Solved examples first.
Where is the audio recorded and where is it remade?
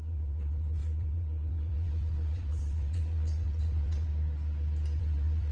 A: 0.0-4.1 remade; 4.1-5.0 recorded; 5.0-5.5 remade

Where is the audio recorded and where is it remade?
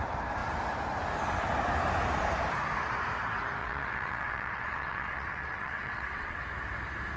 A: 0.0-3.6 recorded; 3.6-6.4 remade; 6.4-7.2 recorded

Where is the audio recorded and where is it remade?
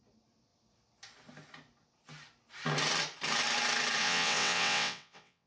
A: 0.0-4.0 recorded; 4.0-5.5 remade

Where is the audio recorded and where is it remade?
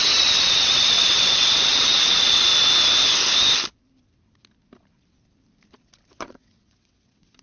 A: 0.0-2.5 remade; 2.5-6.1 recorded; 6.1-7.4 remade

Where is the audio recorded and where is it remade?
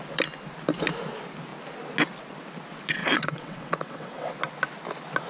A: 0.0-3.0 recorded; 3.0-4.3 remade; 4.3-5.3 recorded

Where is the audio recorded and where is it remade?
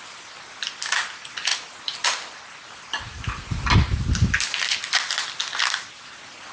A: 0.0-6.5 recorded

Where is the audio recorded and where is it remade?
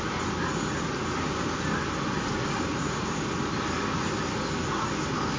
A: 0.0-5.4 recorded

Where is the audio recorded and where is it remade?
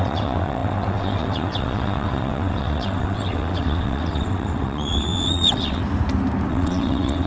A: 0.0-5.8 remade; 5.8-6.5 recorded; 6.5-7.3 remade